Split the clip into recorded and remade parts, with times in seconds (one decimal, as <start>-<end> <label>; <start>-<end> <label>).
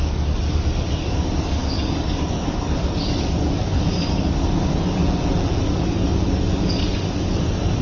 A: 0.0-5.0 remade; 5.0-5.6 recorded; 5.6-7.8 remade